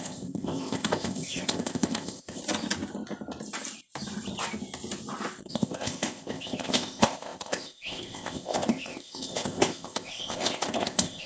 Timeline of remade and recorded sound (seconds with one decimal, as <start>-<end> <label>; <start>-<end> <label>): 0.0-2.4 remade; 2.4-5.5 recorded; 5.5-11.3 remade